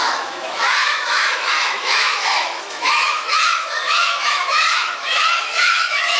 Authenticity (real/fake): fake